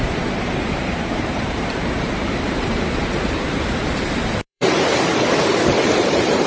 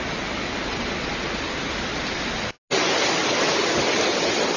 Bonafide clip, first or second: second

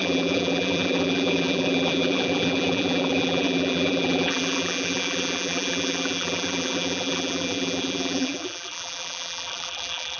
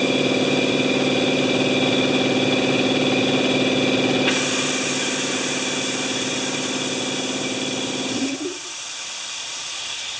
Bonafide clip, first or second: second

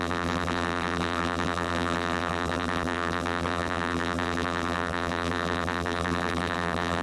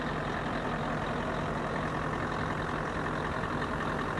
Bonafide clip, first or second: second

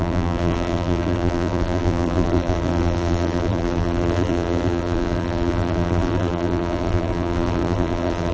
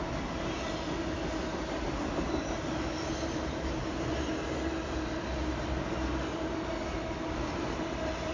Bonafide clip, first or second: second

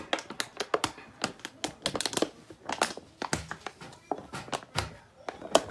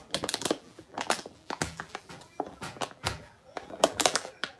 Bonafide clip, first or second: first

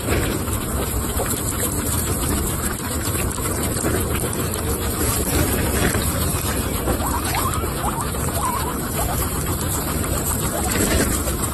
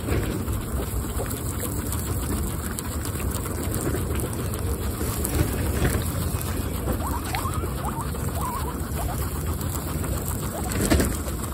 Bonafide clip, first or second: second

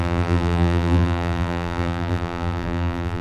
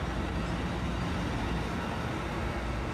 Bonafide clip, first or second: second